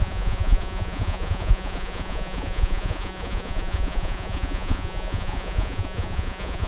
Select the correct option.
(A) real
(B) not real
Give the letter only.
B